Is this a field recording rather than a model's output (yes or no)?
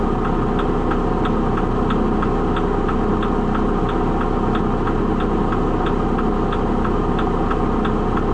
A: yes